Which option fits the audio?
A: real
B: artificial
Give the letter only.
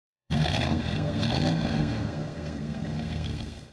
B